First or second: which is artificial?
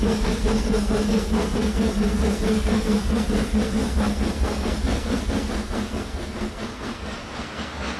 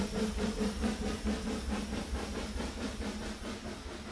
first